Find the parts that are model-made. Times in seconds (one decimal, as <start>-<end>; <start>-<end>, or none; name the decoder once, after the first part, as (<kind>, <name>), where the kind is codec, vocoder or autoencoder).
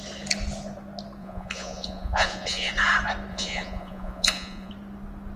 1.2-2.7 (vocoder, Vocos); 3.3-4.7